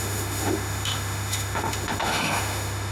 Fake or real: fake